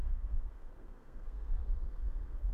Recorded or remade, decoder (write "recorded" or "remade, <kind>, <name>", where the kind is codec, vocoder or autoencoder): remade, codec, SNAC